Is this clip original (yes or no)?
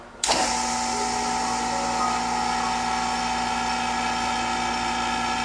yes